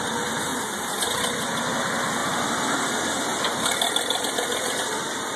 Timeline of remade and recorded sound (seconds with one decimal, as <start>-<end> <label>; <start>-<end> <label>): 0.0-5.4 recorded